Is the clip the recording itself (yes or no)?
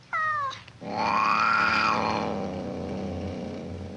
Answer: yes